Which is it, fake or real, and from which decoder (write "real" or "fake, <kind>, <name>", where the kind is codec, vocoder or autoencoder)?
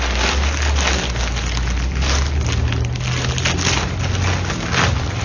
real